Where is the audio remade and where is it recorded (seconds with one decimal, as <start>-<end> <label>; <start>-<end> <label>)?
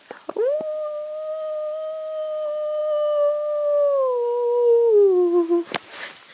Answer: 0.0-6.3 recorded